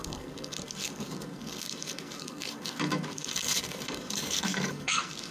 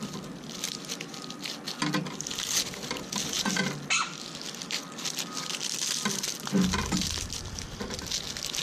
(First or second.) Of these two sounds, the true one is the second